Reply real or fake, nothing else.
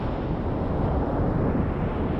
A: real